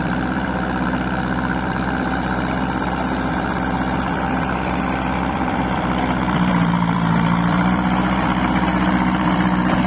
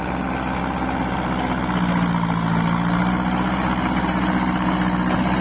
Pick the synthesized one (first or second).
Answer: first